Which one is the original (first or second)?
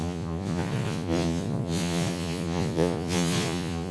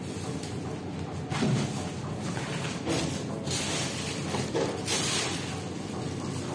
second